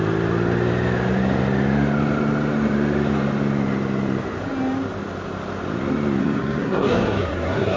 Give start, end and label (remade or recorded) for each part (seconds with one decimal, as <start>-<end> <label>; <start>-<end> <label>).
0.0-6.2 recorded; 6.2-7.8 remade

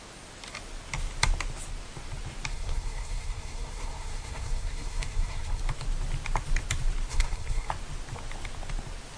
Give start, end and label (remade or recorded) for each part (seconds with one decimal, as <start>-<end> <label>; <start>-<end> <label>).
0.0-2.5 recorded; 2.5-5.6 remade; 5.6-7.1 recorded; 7.1-7.7 remade; 7.7-9.2 recorded

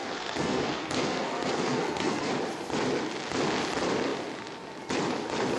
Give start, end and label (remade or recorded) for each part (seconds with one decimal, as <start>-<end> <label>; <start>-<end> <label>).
0.0-2.3 remade; 2.3-5.6 recorded

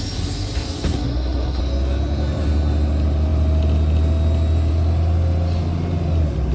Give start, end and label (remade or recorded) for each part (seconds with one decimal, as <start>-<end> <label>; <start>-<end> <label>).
0.0-0.9 recorded; 0.9-1.6 remade; 1.6-6.5 recorded

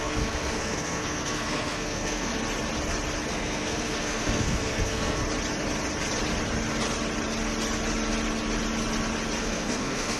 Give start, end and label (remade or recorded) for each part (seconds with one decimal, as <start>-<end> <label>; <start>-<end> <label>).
0.0-2.3 remade; 2.3-3.3 recorded; 3.3-5.2 remade; 5.2-9.4 recorded; 9.4-10.2 remade

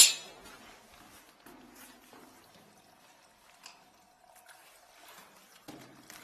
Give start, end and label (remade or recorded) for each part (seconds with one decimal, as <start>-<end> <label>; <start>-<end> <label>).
0.0-6.2 recorded

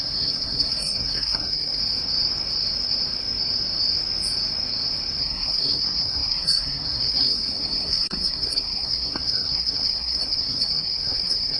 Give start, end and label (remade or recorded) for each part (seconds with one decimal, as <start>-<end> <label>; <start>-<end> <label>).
0.0-1.8 remade; 1.8-5.2 recorded; 5.2-11.6 remade

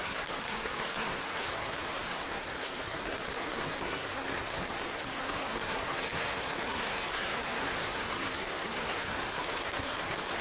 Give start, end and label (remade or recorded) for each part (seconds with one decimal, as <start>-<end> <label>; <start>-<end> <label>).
0.0-10.4 remade